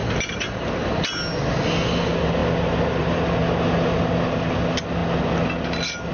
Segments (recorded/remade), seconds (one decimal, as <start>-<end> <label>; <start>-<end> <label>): 0.0-6.1 recorded